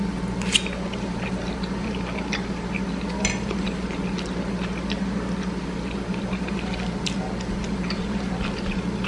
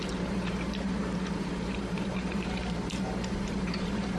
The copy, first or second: second